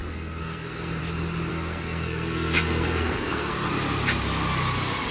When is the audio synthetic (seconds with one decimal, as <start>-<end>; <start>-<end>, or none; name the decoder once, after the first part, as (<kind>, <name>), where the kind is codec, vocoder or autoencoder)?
0.0-1.0 (codec, SNAC); 1.5-3.7